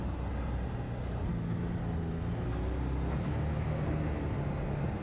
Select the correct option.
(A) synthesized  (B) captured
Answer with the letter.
B